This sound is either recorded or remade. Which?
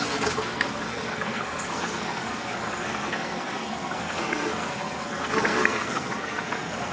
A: remade